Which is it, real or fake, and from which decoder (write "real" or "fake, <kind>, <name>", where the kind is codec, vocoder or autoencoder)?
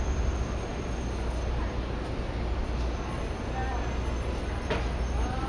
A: real